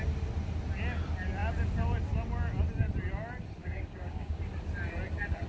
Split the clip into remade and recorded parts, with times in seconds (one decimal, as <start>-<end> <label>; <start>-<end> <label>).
0.0-3.6 recorded; 3.6-4.4 remade; 4.4-5.5 recorded